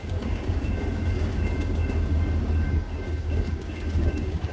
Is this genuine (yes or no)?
no